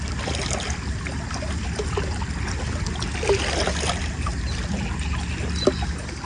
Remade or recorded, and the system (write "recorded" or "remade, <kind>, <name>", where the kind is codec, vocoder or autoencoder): recorded